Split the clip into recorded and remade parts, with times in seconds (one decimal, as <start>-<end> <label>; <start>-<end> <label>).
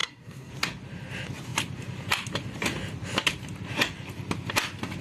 0.0-0.5 remade; 0.5-5.0 recorded